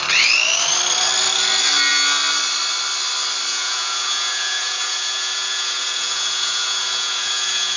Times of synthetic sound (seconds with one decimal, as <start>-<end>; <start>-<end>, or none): 3.5-7.8